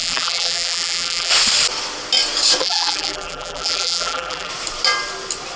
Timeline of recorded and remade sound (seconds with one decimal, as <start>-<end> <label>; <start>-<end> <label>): 0.0-1.3 remade; 1.3-2.6 recorded; 2.6-4.5 remade; 4.5-5.6 recorded